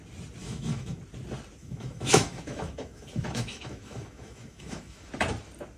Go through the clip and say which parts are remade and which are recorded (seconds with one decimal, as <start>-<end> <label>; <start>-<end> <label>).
0.0-0.4 recorded; 0.4-1.0 remade; 1.0-1.6 recorded; 1.6-5.1 remade; 5.1-5.8 recorded